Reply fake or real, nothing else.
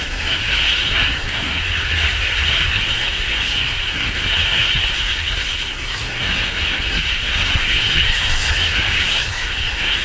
fake